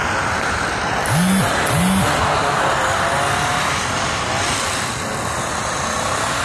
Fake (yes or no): no